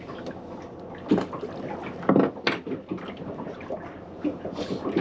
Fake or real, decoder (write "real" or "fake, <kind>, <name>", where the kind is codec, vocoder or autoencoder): real